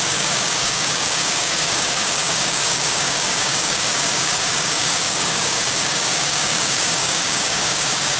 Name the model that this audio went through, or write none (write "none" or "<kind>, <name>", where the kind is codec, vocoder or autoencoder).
codec, DAC